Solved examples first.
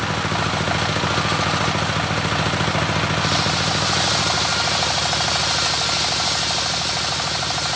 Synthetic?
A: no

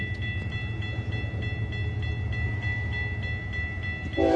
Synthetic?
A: no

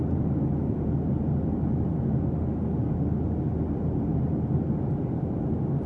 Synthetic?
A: no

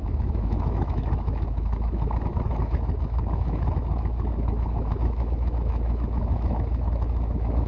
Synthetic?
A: yes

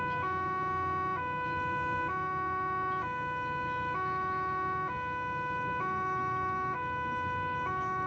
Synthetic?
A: no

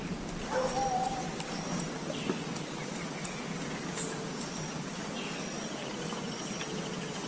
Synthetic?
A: no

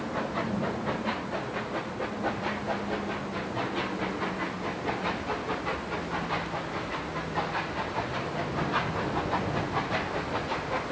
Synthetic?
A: no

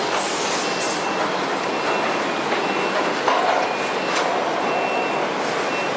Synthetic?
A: no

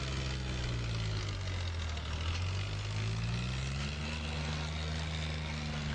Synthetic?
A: no